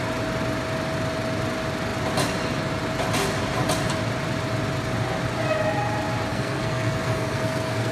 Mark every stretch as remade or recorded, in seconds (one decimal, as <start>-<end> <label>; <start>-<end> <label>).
0.0-6.3 recorded; 6.3-7.9 remade